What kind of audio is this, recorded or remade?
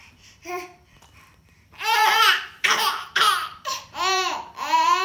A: remade